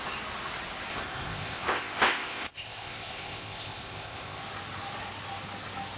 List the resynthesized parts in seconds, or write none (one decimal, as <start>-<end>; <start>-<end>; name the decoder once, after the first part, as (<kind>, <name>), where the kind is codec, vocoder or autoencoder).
0.9-4.4 (codec, ZipCodec)